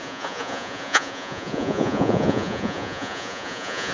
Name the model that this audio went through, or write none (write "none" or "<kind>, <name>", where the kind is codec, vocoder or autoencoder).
vocoder, Vocos